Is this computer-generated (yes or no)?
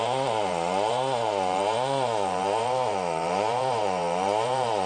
yes